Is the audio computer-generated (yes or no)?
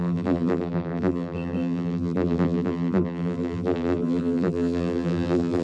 yes